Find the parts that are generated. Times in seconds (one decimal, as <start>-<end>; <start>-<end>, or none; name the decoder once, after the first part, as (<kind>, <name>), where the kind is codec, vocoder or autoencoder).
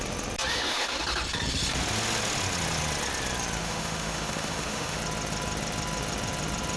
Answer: 0.5-1.0 (autoencoder, DAC-VAE); 3.6-5.0